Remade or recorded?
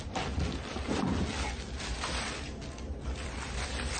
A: recorded